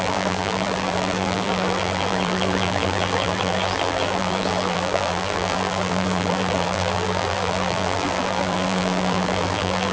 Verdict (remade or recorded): remade